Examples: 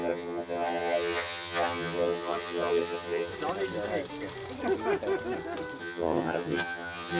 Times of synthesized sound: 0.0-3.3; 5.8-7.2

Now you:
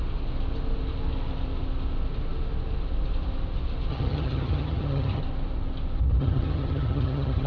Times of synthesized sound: 3.9-5.2; 6.2-7.5

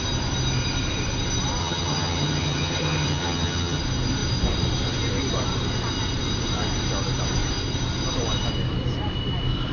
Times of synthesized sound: 1.6-3.8

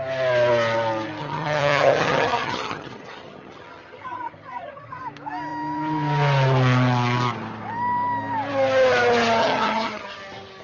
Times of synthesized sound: 1.2-5.0; 9.4-10.2

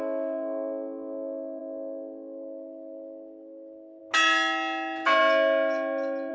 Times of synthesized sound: none

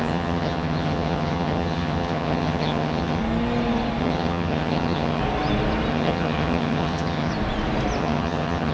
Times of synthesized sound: 0.0-3.2; 4.0-5.2; 5.9-7.3; 8.0-8.7

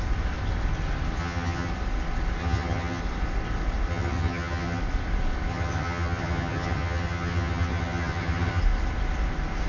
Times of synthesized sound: 1.2-1.7; 2.4-3.0; 3.9-4.8; 5.5-8.6

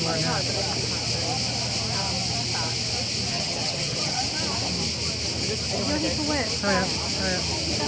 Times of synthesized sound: 3.3-4.2